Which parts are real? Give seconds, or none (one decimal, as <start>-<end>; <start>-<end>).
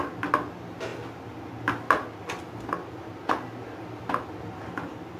0.0-5.2